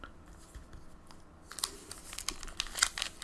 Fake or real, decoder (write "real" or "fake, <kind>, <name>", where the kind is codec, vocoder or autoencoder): real